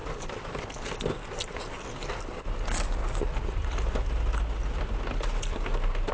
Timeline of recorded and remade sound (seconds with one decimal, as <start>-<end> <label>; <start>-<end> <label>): 0.0-6.1 recorded